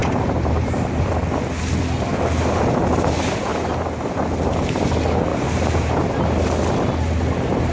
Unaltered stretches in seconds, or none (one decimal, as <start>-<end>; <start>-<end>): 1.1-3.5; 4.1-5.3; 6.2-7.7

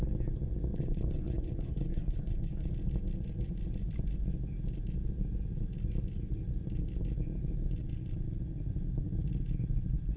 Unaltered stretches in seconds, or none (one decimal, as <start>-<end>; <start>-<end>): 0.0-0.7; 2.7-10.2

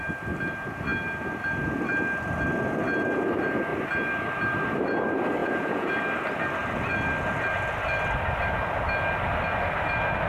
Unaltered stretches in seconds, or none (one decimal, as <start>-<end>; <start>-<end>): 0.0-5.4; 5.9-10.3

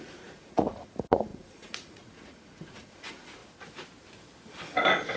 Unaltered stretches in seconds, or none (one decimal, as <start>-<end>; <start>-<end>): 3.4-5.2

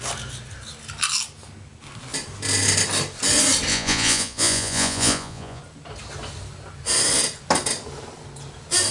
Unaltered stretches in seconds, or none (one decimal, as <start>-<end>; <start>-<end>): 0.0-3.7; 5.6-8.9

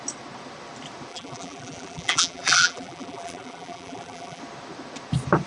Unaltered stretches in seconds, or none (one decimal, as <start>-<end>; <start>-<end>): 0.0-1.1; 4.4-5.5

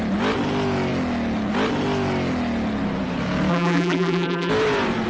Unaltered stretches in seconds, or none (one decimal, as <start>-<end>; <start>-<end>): 0.0-3.5; 4.5-5.1